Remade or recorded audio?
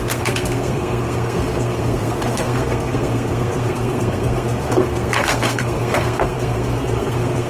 remade